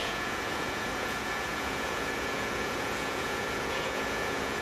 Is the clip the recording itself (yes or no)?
no